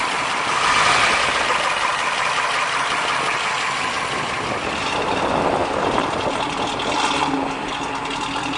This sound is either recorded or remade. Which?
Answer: recorded